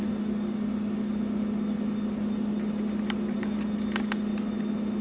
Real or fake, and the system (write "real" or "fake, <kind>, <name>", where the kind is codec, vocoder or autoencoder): real